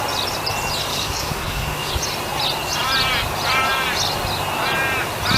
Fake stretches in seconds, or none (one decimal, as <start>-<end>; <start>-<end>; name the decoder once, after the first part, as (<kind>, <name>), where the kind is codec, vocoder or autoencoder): 0.9-1.9 (codec, DAC)